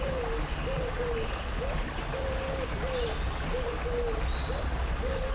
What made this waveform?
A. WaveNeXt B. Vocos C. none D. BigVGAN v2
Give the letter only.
C